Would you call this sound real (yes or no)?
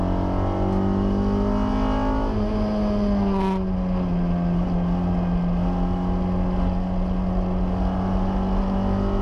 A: yes